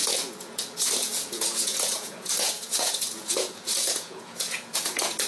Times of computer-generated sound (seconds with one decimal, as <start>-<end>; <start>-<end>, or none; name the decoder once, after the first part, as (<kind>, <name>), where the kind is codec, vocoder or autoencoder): 0.0-5.3 (vocoder, Vocos)